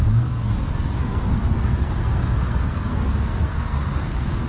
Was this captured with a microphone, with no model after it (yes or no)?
no